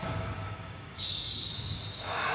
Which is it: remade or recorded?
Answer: remade